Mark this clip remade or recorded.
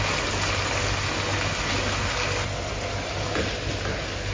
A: recorded